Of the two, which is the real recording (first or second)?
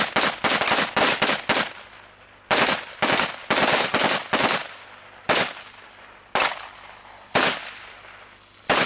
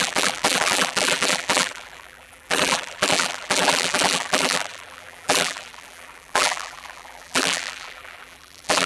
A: first